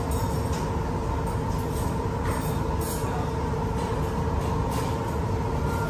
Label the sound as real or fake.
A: real